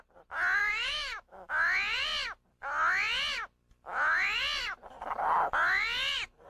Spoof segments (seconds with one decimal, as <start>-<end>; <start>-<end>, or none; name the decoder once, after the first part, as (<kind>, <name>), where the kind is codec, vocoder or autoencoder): 0.6-1.5 (autoencoder, DAC-VAE)